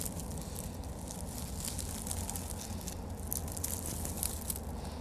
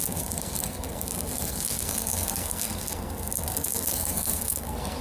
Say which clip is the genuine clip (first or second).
first